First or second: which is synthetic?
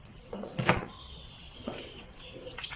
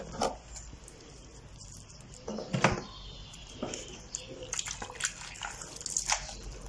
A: first